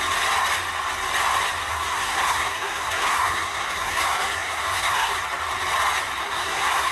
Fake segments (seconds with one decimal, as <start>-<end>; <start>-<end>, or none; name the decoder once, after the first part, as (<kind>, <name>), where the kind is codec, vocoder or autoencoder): 1.7-5.2 (codec, SNAC); 6.2-6.9